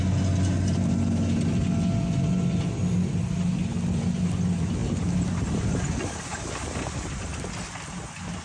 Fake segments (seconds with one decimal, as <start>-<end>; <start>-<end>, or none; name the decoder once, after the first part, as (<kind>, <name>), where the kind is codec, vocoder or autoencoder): none